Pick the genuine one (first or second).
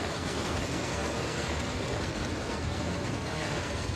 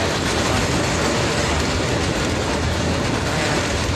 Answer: second